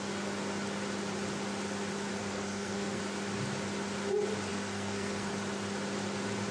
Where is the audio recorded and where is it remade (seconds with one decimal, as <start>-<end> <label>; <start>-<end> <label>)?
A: 0.0-2.2 recorded; 2.2-3.0 remade; 3.0-4.5 recorded; 4.5-5.3 remade; 5.3-6.5 recorded